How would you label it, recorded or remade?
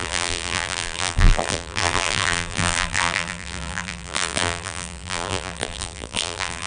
remade